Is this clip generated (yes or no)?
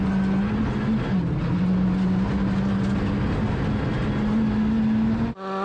no